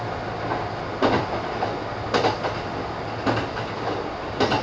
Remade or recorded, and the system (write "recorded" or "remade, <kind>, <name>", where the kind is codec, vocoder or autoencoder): recorded